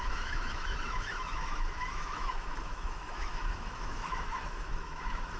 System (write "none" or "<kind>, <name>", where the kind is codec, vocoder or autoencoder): autoencoder, DAC-VAE